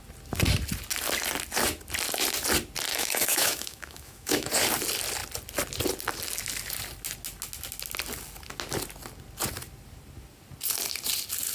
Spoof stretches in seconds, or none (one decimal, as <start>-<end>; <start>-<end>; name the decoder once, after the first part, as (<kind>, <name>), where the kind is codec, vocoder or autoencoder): 2.9-4.5 (autoencoder, DAC-VAE)